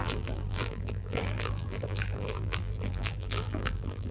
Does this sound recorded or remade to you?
remade